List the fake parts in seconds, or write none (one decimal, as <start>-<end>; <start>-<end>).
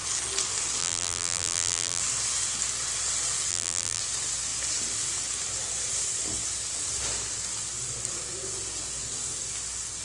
0.8-2.0; 3.5-4.0